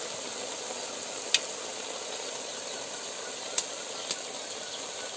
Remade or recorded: recorded